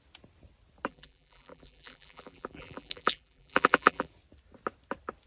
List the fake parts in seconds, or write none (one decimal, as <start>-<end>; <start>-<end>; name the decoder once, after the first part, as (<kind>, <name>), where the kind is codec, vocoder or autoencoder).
0.9-4.1 (vocoder, BigVGAN v2)